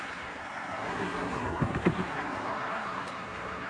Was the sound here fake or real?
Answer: fake